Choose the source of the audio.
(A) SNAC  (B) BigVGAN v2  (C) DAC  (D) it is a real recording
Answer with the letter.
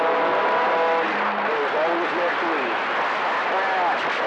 D